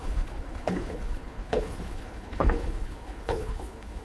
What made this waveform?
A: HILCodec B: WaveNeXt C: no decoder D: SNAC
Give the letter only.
A